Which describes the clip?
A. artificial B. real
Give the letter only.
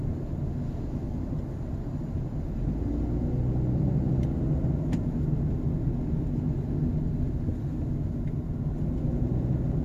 B